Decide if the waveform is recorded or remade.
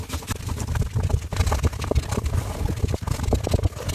recorded